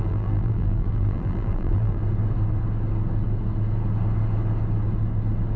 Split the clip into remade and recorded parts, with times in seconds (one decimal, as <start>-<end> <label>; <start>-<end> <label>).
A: 0.0-2.0 remade; 2.0-5.6 recorded